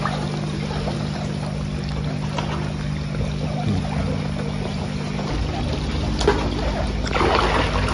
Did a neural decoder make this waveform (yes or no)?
no